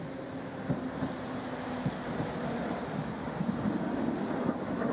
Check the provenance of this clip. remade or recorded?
recorded